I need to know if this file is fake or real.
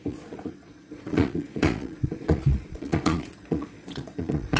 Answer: fake